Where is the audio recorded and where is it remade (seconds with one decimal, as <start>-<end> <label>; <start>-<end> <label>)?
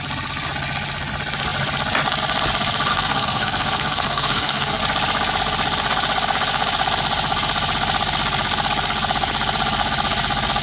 0.0-2.9 recorded; 2.9-4.8 remade; 4.8-10.6 recorded